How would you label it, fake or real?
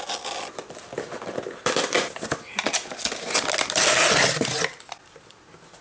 real